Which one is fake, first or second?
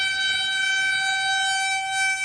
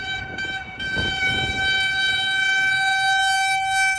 second